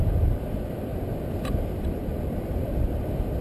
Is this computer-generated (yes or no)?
yes